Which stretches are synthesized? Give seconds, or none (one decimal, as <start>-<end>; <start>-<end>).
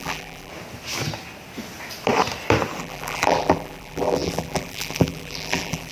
0.0-0.5; 2.8-5.9